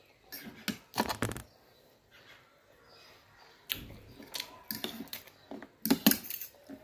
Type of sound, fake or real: real